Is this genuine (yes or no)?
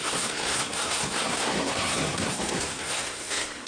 no